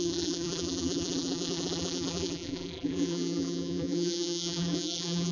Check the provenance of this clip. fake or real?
fake